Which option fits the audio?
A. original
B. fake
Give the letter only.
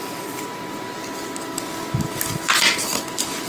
A